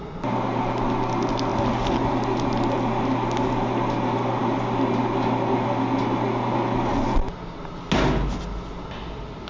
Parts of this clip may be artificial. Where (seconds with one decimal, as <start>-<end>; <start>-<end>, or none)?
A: none